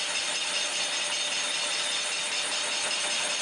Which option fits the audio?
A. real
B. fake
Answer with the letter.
A